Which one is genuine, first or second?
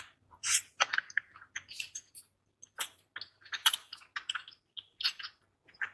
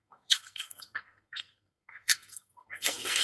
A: first